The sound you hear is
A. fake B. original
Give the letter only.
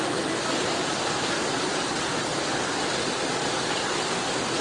B